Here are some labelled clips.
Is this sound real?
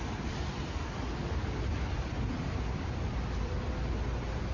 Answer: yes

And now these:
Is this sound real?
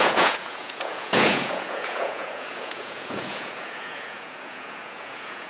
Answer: no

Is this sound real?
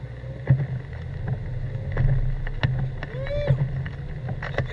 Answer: yes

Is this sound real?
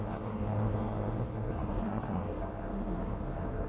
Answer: no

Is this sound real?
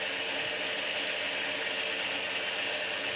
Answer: yes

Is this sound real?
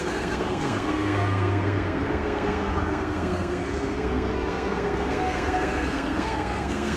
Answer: no